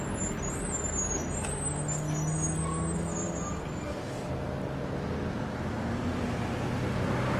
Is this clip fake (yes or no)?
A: no